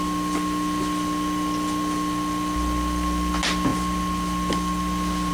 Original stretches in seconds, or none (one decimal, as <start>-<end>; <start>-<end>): 0.0-5.3